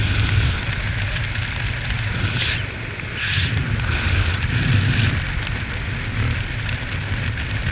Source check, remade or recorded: recorded